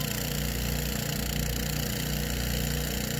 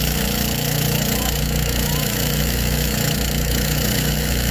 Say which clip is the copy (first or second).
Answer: second